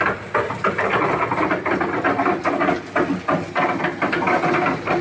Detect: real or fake real